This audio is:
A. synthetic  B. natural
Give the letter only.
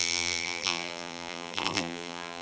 A